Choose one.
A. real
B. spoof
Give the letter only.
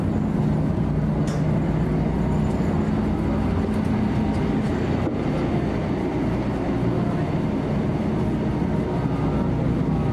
A